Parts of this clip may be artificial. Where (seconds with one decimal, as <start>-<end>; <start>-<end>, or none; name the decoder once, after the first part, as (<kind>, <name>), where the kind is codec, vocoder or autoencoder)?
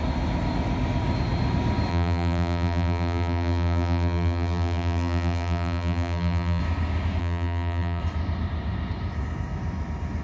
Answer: 1.9-6.6 (vocoder, BigVGAN v2); 7.2-8.0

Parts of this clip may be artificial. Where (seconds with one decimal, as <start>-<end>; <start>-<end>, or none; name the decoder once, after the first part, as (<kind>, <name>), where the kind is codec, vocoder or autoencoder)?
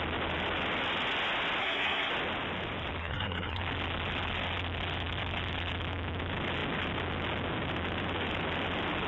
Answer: 1.6-2.1 (codec, SNAC); 3.0-3.6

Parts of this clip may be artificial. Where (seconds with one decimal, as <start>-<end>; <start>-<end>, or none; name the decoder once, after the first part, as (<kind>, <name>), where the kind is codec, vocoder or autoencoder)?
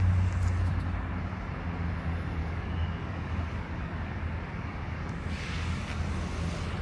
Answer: 2.4-5.8 (codec, DAC)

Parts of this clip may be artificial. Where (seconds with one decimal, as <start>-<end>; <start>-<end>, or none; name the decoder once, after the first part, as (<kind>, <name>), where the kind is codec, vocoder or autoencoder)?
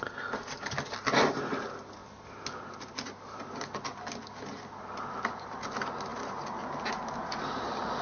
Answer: none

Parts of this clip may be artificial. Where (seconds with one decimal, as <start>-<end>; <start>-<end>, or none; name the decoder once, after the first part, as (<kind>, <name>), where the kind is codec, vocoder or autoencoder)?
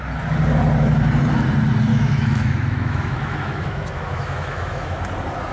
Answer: 1.9-5.0 (autoencoder, DAC-VAE)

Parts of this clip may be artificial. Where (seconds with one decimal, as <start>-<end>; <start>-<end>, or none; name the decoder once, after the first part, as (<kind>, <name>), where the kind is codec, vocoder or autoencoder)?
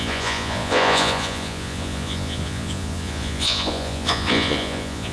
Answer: 0.0-5.1 (vocoder, Vocos)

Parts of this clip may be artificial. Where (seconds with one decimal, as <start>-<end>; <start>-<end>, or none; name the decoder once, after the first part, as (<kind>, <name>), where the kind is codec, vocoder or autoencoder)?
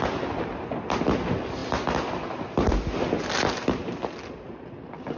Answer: none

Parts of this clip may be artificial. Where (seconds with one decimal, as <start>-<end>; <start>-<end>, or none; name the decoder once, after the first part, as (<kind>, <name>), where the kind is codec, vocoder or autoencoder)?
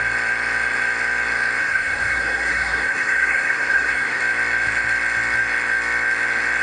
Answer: 1.6-4.2 (codec, SNAC)